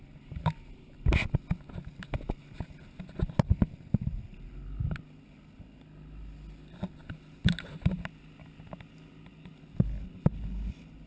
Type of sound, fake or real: real